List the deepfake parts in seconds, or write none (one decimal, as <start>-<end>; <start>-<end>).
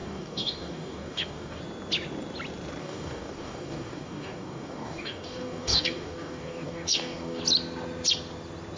0.0-1.6; 2.8-7.4